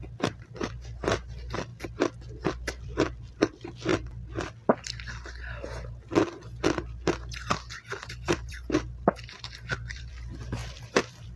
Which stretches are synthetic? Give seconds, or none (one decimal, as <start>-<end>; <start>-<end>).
0.0-3.9; 8.1-11.4

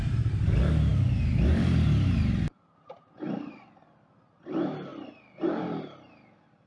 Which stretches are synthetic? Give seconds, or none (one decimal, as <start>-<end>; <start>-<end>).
none

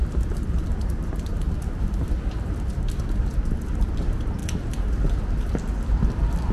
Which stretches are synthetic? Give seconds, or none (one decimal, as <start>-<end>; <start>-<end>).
0.0-4.4; 5.3-6.5

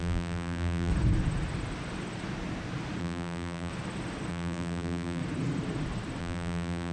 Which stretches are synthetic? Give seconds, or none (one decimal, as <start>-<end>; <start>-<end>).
0.0-0.9; 3.0-3.7; 4.3-5.2; 6.2-6.9

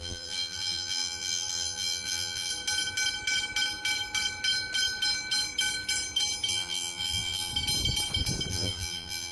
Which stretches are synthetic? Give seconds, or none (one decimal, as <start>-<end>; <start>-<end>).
0.0-2.5; 6.5-7.5; 8.5-9.3

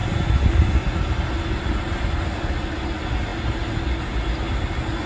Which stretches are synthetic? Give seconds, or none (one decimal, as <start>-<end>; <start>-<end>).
none

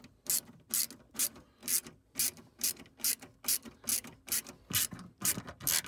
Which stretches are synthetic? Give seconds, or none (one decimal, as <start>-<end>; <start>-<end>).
none

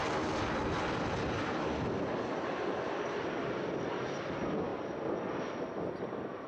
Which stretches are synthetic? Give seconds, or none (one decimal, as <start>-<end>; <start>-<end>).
0.0-3.9